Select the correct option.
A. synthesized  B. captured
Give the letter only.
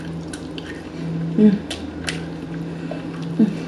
B